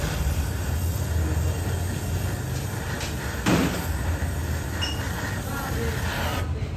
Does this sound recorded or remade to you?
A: recorded